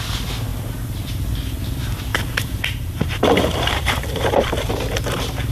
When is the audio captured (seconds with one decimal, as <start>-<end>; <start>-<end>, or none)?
0.0-2.1; 4.5-5.5

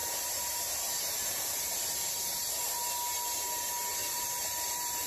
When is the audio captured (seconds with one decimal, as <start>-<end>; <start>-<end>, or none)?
2.9-4.0

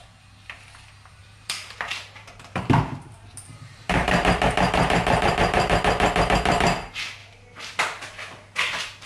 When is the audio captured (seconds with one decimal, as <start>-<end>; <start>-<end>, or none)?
0.0-1.2; 5.8-9.1

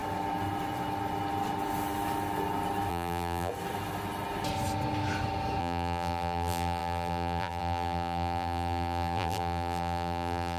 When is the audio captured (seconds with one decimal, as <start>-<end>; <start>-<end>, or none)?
0.0-2.9; 3.5-5.6

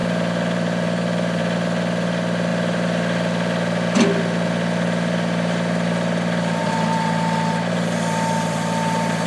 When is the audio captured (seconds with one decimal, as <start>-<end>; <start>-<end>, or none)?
1.4-2.5; 4.0-6.6

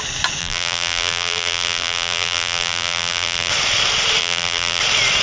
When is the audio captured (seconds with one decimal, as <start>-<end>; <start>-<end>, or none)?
0.0-0.4; 3.5-4.2; 4.8-5.2